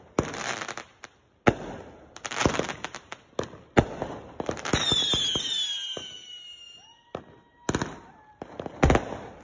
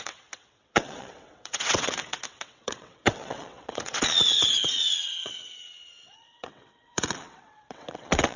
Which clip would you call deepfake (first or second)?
second